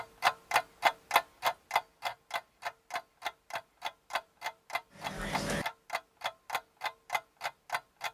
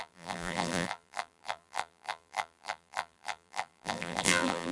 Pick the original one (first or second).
first